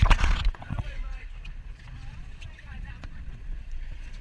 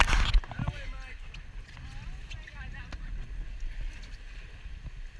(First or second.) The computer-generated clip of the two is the first